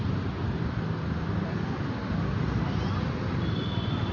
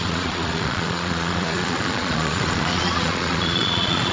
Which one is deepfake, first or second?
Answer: second